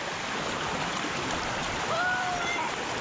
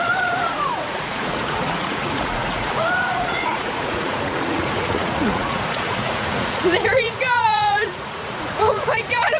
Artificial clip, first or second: second